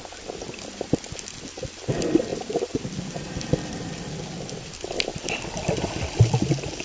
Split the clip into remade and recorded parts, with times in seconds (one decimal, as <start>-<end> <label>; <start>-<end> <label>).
0.0-6.8 recorded